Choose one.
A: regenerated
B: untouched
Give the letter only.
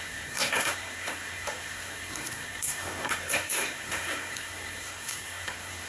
A